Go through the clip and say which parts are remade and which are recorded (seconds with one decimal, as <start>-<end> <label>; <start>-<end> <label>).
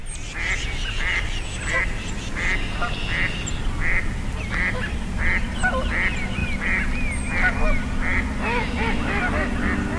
0.0-10.0 recorded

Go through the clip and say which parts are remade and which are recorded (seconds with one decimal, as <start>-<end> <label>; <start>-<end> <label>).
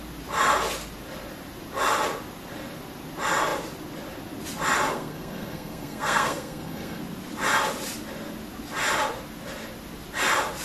0.0-4.9 recorded; 4.9-7.0 remade; 7.0-10.6 recorded